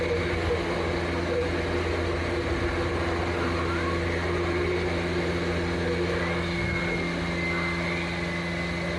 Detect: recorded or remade recorded